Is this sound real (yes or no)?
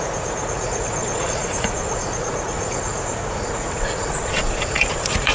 no